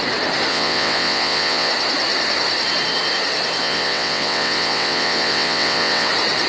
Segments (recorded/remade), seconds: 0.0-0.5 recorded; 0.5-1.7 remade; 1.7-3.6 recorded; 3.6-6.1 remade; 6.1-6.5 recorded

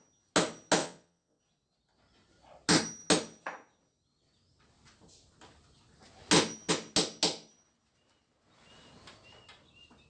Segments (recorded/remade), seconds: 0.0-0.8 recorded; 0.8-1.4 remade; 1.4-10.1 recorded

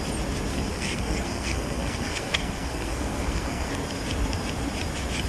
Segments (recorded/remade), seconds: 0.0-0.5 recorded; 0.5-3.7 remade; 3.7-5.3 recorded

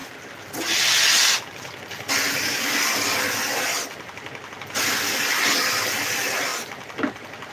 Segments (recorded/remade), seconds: 0.0-7.5 recorded

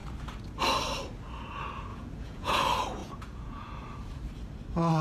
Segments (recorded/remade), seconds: 0.0-1.9 recorded; 1.9-2.6 remade; 2.6-3.0 recorded; 3.0-3.7 remade; 3.7-5.0 recorded